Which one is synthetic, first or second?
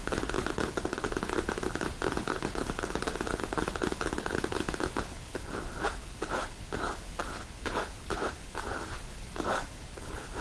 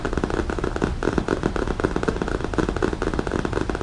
first